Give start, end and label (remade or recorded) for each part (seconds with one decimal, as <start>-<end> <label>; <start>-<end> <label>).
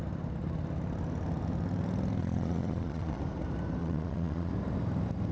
0.0-2.2 recorded; 2.2-3.2 remade; 3.2-3.8 recorded; 3.8-4.5 remade; 4.5-5.3 recorded